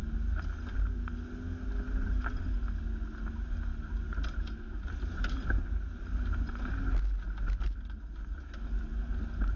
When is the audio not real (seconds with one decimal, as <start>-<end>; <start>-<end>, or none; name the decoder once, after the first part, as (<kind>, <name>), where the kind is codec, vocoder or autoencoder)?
3.7-5.6 (vocoder, BigVGAN v2)